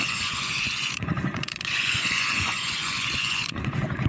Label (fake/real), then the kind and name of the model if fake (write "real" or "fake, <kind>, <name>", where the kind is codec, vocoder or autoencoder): fake, vocoder, Vocos